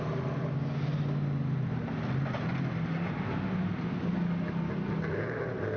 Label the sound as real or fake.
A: real